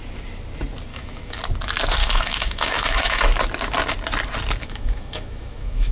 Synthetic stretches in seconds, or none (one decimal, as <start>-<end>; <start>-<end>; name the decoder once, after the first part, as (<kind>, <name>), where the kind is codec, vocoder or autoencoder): 0.9-1.4 (autoencoder, DAC-VAE); 2.0-3.2; 4.6-5.9